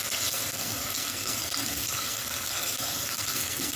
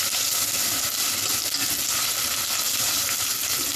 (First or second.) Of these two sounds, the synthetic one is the first